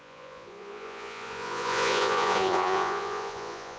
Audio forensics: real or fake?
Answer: fake